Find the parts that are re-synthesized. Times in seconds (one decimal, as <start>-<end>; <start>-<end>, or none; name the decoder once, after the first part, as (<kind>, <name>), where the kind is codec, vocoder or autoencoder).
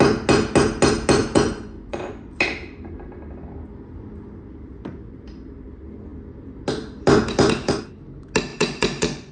1.2-2.3 (vocoder, Vocos); 8.5-9.3